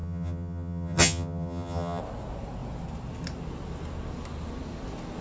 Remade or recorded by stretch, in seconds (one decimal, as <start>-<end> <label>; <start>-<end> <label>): 0.0-2.0 remade; 2.0-5.2 recorded